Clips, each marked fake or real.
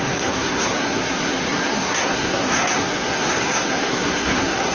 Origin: fake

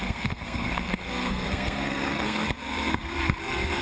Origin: fake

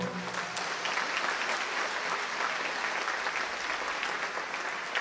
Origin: real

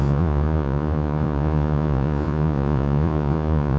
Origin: fake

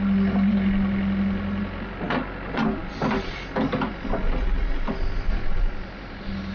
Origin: real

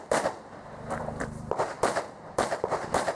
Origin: fake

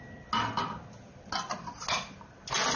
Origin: real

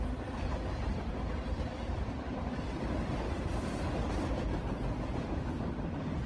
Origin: real